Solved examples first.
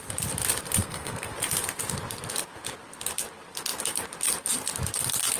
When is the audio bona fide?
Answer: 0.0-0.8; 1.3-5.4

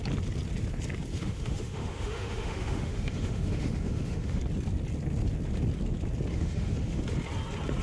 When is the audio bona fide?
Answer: 0.0-1.1; 4.4-6.3; 7.0-7.8

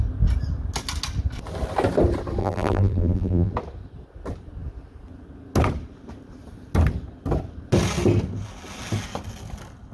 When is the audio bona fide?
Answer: 0.0-2.4; 3.5-9.9

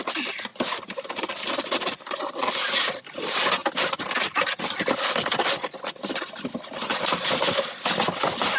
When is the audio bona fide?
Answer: 0.0-8.6

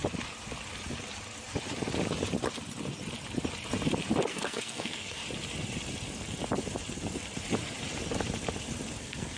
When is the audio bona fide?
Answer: 0.0-4.3; 5.2-9.0

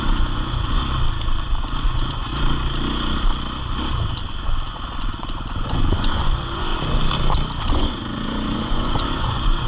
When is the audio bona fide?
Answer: 0.8-1.6; 2.3-4.7; 6.7-7.7

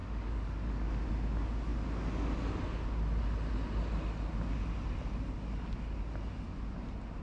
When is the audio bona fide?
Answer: 1.1-7.2

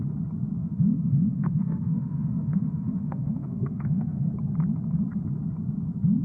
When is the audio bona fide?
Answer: 0.0-0.6; 4.3-6.2